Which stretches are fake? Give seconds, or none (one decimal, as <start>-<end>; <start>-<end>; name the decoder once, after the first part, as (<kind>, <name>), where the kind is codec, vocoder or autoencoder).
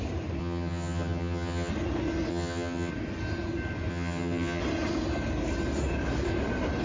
0.4-1.7 (vocoder, HiFi-GAN); 2.3-2.9; 3.9-4.6